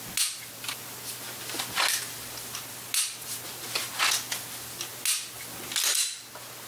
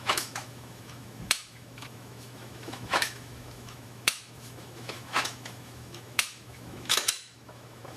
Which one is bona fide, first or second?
first